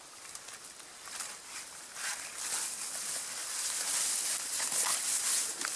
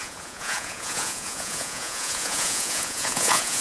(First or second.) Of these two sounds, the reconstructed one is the second